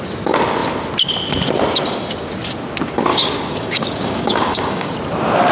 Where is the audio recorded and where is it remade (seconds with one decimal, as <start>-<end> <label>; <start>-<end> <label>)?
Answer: 0.0-3.1 recorded; 3.1-4.9 remade; 4.9-5.5 recorded